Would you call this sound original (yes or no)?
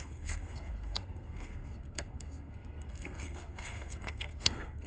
no